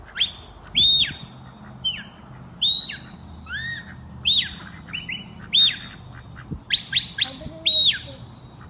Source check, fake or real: real